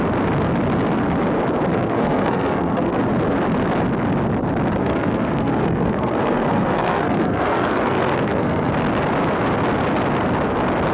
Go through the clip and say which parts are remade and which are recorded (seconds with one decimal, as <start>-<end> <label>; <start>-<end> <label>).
0.0-1.7 recorded; 1.7-3.0 remade; 3.0-4.8 recorded; 4.8-8.7 remade; 8.7-10.9 recorded